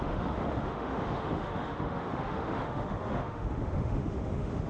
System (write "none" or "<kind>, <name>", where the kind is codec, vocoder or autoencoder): autoencoder, DAC-VAE